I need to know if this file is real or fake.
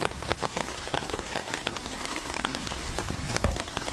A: fake